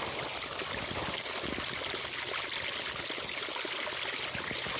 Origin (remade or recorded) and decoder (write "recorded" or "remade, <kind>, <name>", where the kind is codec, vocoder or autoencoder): recorded